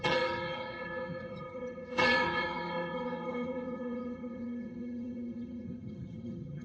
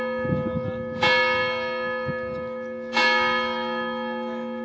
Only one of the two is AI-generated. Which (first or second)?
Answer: first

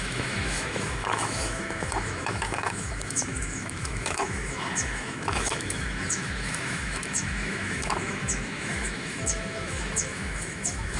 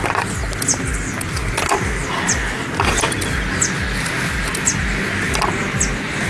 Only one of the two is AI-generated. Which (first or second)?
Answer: first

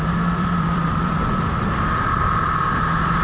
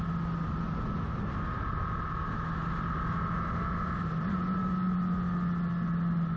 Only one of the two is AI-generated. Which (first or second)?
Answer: first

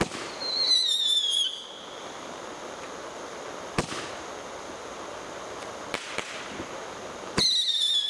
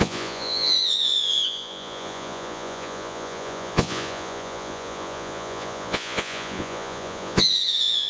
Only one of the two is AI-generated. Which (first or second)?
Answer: second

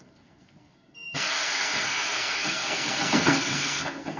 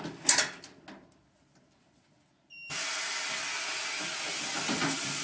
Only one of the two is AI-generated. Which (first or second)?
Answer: first